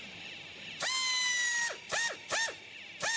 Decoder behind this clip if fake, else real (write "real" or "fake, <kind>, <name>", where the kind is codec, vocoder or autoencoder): real